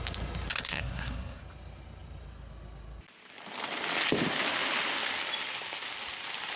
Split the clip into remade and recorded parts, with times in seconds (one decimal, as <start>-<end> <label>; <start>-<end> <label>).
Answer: 0.0-0.5 recorded; 0.5-1.4 remade; 1.4-6.6 recorded